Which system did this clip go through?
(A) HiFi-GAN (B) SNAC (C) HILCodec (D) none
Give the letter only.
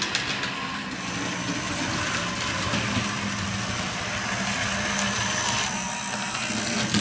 D